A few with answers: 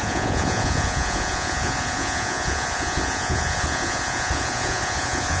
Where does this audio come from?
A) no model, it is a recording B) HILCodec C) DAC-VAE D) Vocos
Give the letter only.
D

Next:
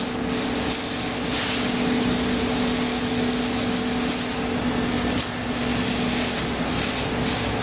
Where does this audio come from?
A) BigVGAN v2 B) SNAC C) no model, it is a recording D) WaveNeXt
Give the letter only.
C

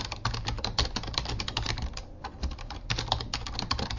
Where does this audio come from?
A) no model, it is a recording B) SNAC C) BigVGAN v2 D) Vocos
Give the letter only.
A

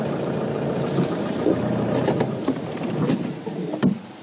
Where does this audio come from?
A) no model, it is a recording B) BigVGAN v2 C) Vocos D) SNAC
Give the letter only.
B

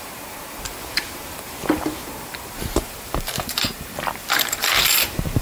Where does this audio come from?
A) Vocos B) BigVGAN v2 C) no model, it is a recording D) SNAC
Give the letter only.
B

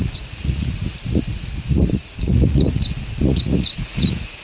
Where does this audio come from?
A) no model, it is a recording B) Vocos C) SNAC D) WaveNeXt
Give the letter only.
B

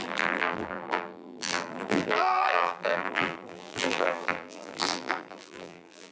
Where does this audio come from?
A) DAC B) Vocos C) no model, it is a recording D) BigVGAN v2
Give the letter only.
D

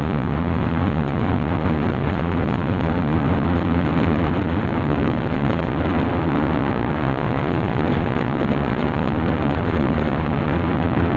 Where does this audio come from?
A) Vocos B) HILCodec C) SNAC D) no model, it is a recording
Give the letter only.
A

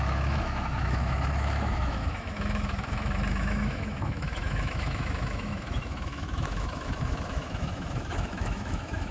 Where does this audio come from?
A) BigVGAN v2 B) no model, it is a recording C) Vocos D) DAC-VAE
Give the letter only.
D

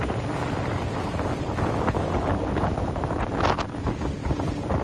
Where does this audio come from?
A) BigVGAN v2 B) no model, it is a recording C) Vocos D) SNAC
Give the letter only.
B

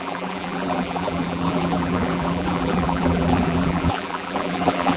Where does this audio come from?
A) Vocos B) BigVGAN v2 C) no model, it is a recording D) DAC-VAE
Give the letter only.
B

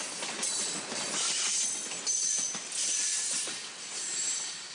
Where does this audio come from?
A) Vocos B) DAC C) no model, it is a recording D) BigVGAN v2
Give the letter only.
C